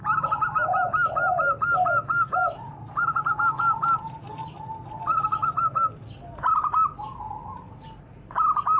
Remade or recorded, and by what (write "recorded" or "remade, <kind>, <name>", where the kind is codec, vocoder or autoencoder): recorded